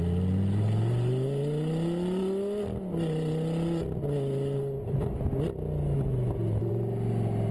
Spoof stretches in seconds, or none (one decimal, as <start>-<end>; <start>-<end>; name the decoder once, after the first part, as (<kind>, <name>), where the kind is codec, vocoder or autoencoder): none